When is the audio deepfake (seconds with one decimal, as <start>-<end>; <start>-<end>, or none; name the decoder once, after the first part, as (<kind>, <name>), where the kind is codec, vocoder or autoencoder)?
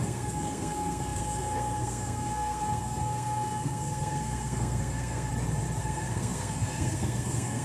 0.0-5.3 (codec, SNAC); 5.8-7.6